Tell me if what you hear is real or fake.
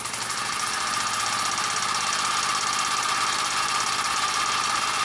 real